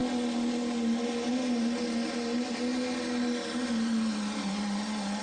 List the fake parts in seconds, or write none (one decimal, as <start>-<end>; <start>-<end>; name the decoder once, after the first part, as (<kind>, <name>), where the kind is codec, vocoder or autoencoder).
none

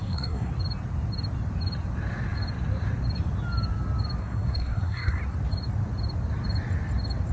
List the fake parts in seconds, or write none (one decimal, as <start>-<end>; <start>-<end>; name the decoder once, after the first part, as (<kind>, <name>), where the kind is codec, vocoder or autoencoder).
0.0-0.5 (codec, SNAC); 4.2-5.2

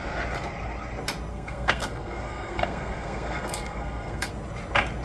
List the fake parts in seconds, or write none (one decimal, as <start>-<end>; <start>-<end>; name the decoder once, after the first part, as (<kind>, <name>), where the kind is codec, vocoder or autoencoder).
1.3-4.3 (codec, SNAC)

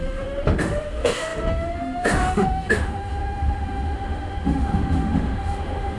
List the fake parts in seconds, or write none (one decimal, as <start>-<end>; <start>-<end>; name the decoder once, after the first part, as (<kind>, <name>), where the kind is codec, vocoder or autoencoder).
0.0-6.0 (autoencoder, DAC-VAE)